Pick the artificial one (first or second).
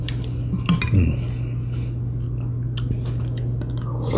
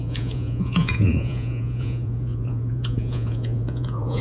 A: second